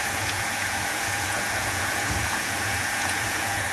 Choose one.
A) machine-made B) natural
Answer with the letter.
A